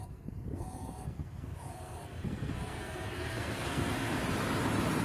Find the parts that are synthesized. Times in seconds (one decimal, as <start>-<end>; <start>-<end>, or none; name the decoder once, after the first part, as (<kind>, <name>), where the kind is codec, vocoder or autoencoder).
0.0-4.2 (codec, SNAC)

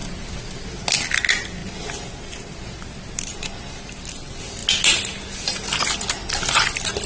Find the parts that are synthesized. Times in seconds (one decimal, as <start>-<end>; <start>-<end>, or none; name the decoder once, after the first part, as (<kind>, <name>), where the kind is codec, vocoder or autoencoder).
0.0-0.7 (vocoder, BigVGAN v2)

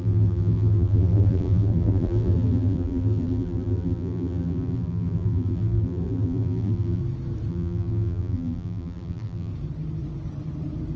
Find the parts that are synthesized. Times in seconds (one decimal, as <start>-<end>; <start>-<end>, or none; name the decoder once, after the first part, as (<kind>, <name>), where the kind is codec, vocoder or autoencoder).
0.0-7.0 (vocoder, BigVGAN v2); 7.5-9.5